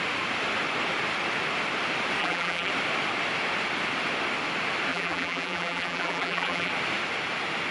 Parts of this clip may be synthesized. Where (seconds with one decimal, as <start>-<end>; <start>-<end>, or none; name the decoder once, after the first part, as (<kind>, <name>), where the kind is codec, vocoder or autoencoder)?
2.2-2.7 (vocoder, BigVGAN v2); 4.9-6.7